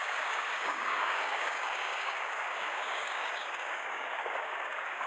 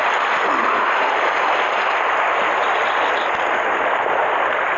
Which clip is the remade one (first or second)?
first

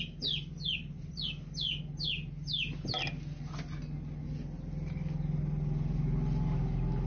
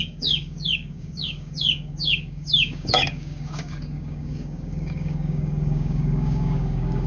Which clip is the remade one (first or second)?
second